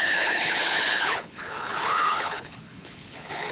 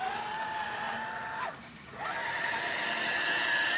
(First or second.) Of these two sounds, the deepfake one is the first